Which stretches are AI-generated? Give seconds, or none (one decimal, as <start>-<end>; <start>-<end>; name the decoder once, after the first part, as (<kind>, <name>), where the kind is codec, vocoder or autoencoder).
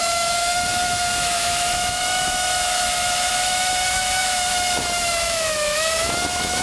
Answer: 0.0-6.6 (autoencoder, DAC-VAE)